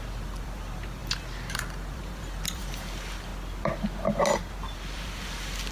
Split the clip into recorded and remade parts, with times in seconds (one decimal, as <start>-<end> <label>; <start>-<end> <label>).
0.0-1.0 remade; 1.0-1.5 recorded; 1.5-3.3 remade; 3.3-4.6 recorded; 4.6-5.7 remade